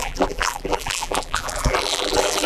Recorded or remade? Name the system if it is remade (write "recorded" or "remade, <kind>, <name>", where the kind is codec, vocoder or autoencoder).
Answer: remade, vocoder, BigVGAN v2